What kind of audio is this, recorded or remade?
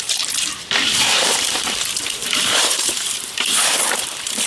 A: remade